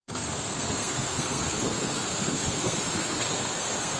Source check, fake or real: fake